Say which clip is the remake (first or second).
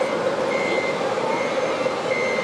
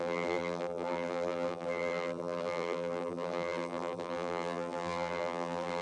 second